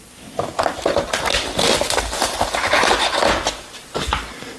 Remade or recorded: recorded